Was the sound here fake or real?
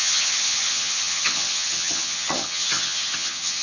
fake